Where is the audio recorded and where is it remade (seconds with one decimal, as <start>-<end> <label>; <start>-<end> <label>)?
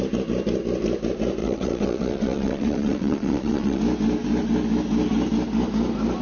0.0-1.4 recorded; 1.4-3.8 remade; 3.8-6.2 recorded